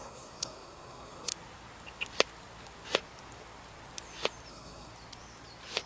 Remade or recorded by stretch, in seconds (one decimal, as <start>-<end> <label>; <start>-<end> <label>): 0.0-1.3 remade; 1.3-4.5 recorded; 4.5-4.9 remade; 4.9-5.9 recorded